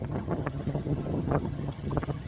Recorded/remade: remade